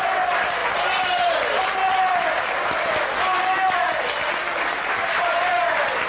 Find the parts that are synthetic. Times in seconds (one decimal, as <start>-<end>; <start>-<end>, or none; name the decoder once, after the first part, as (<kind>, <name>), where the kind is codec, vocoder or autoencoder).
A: none